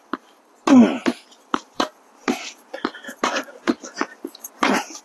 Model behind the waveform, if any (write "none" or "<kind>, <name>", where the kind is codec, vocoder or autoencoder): none